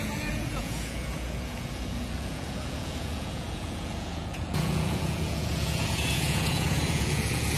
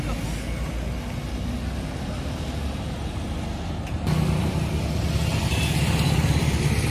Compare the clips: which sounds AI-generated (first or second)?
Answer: first